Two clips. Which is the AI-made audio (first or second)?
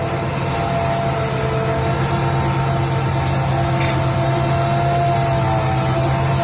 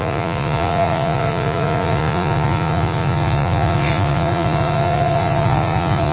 second